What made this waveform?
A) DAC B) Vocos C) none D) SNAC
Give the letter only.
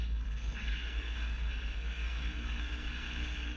D